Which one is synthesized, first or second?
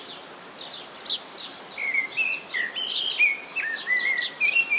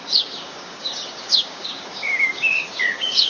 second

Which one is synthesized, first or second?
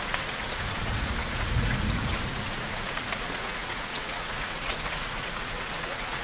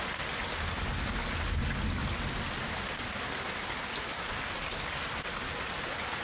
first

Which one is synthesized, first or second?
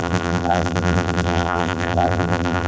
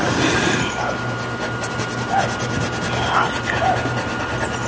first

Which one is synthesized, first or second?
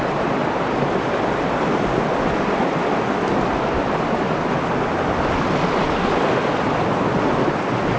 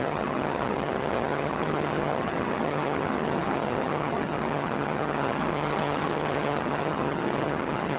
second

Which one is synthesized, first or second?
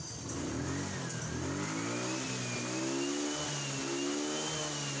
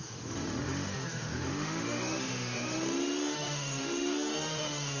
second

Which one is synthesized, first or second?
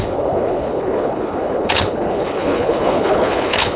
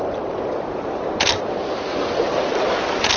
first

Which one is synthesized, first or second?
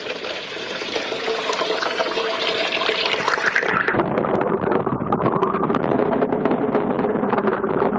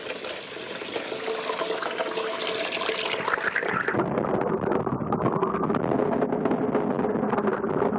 first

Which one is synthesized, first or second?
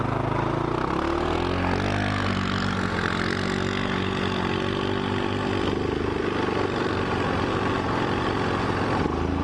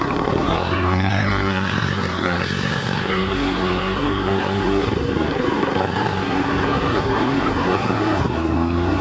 second